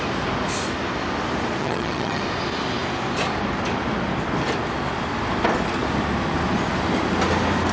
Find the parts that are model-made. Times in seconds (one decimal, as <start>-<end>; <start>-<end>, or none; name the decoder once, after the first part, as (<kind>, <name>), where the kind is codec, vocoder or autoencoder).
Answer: 1.6-2.2 (vocoder, HiFi-GAN)